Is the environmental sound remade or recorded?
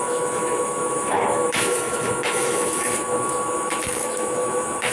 remade